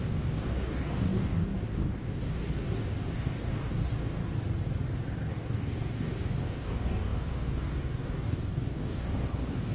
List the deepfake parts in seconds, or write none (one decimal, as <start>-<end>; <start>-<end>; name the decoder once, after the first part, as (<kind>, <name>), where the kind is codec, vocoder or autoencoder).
0.0-4.2 (codec, DAC); 5.3-9.7